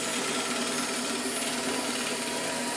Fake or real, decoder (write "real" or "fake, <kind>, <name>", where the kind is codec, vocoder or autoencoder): real